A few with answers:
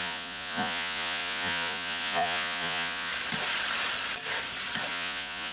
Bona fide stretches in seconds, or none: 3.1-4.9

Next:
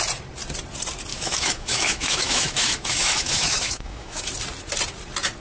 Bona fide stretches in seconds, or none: 0.0-1.1; 4.2-5.4

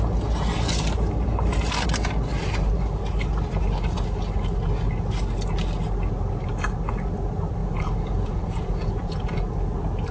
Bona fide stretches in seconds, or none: 0.0-7.6; 9.4-10.1